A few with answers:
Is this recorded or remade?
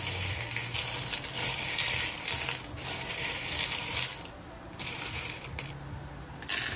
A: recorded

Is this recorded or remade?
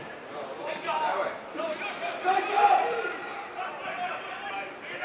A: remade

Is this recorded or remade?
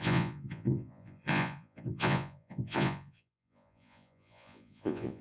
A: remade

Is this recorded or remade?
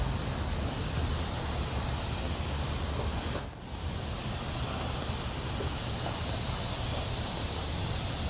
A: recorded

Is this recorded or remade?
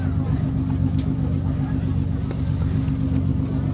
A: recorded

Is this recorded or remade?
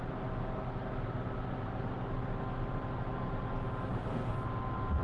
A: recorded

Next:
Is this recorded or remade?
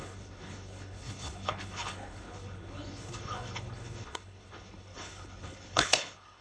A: remade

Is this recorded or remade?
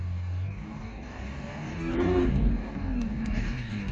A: remade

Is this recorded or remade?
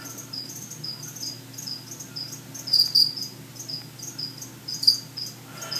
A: recorded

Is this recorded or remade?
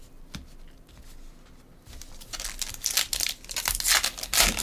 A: recorded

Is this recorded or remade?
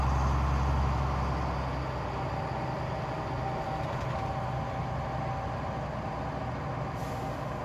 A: recorded